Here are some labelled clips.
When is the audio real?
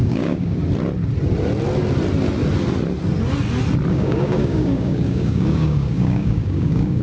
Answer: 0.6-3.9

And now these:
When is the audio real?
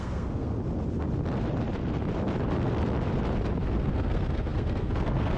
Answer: 0.6-3.8